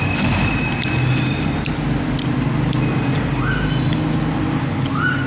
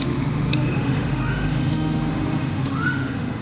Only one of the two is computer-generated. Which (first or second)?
second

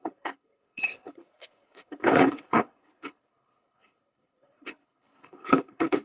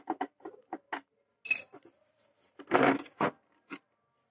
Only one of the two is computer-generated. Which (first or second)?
first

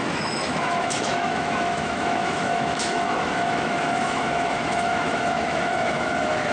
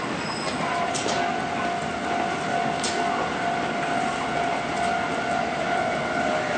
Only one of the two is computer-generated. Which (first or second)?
first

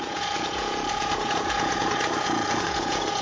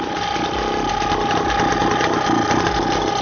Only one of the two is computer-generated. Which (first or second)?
first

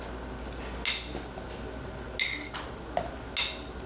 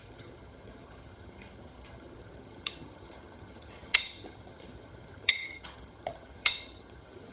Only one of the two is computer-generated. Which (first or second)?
second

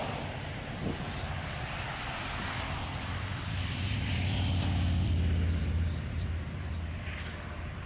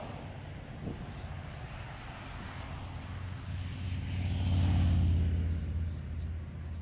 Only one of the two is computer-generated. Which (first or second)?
first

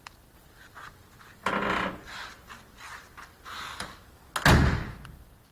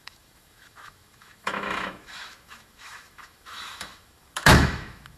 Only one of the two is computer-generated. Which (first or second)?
second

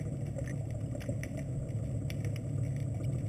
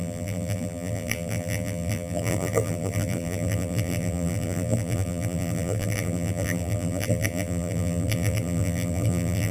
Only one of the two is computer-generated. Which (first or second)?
second